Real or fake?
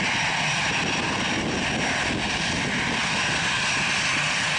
real